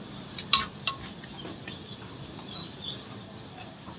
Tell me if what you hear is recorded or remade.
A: recorded